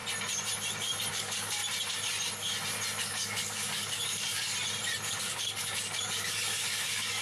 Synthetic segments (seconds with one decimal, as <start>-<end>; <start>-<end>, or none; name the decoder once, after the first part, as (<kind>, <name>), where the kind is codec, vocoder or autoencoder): 1.1-1.6 (codec, DAC); 3.0-4.5; 5.1-7.2

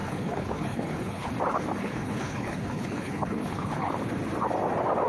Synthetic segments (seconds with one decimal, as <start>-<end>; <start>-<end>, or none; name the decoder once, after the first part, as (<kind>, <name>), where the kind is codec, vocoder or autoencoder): 0.0-1.3 (codec, HILCodec); 1.8-3.9

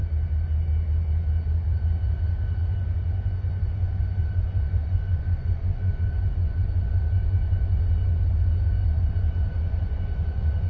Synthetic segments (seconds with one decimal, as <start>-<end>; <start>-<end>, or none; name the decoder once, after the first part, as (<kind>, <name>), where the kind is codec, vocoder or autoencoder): 1.7-10.7 (vocoder, Vocos)